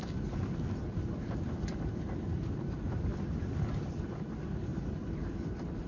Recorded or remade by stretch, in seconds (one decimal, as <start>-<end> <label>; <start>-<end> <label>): 0.0-3.1 remade; 3.1-3.8 recorded; 3.8-5.9 remade